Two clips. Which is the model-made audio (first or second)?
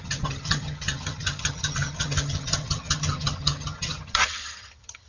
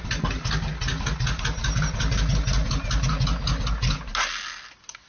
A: first